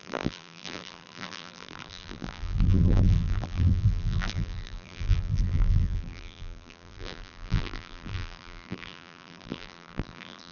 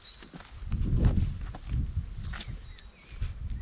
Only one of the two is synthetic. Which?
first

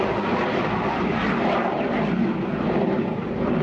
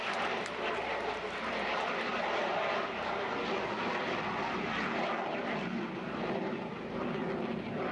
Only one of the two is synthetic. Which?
first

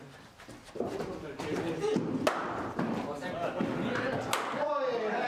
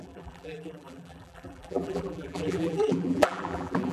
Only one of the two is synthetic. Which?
second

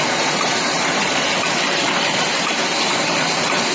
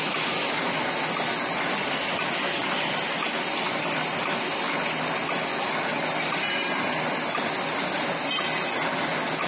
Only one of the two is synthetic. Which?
first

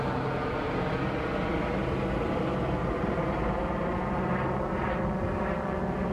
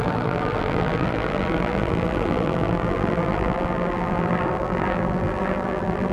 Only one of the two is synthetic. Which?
second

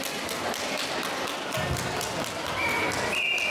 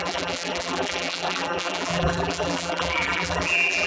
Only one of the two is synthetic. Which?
second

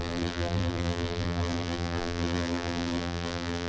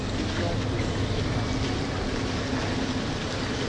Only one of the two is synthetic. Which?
first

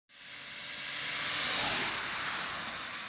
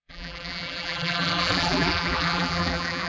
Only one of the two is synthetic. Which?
second